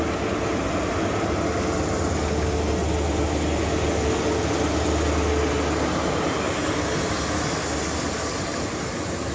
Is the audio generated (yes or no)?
no